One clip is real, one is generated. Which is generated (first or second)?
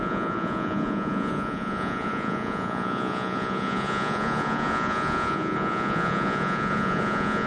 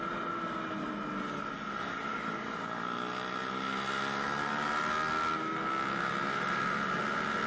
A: first